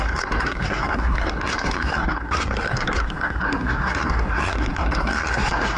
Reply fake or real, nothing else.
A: fake